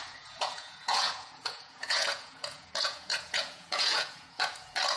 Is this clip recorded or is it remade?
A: remade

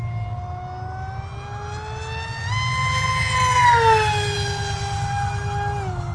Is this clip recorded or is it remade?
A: recorded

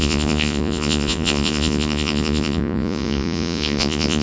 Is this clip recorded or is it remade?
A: remade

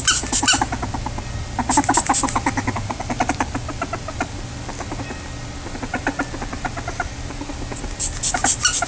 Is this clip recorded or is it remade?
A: recorded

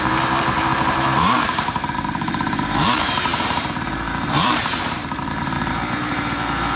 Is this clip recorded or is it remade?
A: remade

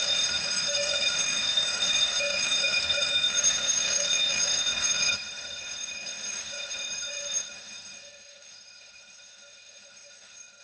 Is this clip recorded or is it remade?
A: remade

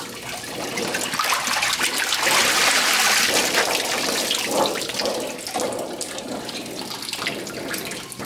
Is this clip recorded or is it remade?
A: recorded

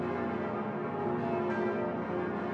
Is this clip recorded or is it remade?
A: recorded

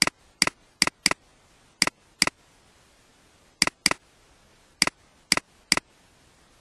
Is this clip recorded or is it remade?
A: recorded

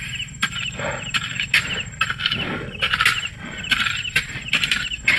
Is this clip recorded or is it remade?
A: recorded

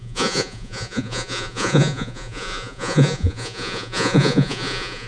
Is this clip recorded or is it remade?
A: remade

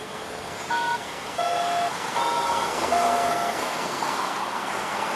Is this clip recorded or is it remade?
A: remade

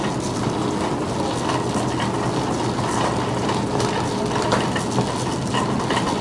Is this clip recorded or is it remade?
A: recorded